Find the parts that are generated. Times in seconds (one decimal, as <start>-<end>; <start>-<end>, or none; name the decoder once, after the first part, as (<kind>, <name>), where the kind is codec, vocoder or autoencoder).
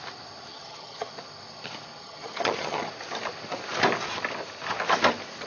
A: 0.5-1.1 (vocoder, HiFi-GAN); 2.0-2.9